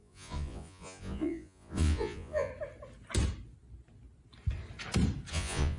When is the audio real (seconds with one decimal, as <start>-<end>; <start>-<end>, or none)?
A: 2.5-5.3